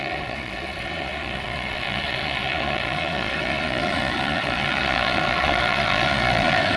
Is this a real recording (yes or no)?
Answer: no